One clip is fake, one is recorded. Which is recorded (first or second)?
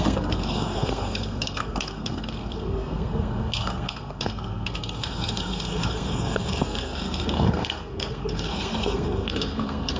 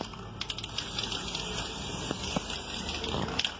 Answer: second